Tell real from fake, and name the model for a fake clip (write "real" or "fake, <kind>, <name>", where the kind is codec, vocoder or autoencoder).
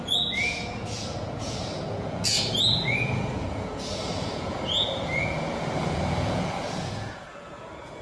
fake, vocoder, Vocos